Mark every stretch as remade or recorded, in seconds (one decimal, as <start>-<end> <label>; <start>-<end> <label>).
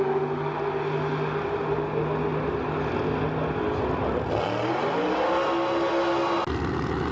0.0-7.1 recorded